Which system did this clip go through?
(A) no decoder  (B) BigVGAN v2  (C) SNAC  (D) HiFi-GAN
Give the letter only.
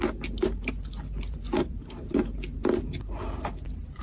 A